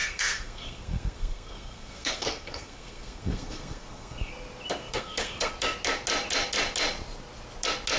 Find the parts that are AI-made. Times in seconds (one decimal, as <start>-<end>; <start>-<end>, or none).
0.0-4.3; 4.8-5.5